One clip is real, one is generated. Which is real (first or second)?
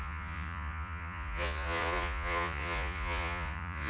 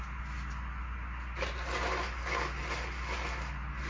second